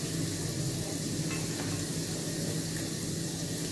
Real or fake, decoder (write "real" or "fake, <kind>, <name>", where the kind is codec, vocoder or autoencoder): real